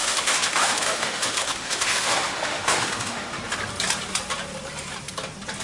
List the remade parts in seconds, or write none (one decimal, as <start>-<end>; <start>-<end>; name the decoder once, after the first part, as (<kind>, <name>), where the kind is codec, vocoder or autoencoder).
0.0-3.4 (autoencoder, DAC-VAE)